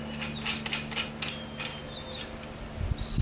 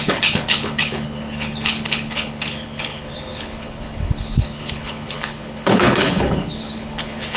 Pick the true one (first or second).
first